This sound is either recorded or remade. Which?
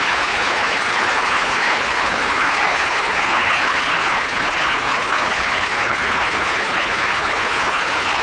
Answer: remade